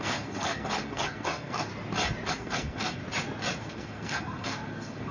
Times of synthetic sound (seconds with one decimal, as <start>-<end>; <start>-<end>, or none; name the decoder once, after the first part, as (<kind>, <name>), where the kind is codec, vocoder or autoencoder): 0.0-1.7 (codec, SNAC); 2.3-3.0; 3.6-5.1